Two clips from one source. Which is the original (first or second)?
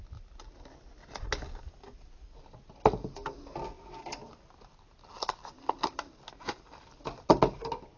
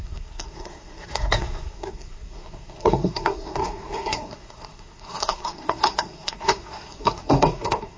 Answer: first